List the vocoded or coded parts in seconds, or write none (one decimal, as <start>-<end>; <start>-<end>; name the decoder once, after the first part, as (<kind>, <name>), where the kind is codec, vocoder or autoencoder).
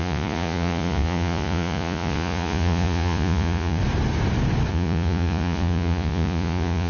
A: 0.0-3.8 (vocoder, Vocos); 4.7-6.9